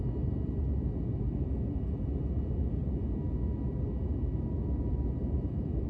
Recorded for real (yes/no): yes